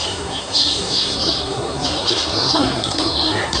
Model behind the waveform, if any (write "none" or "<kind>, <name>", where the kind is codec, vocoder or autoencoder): codec, SNAC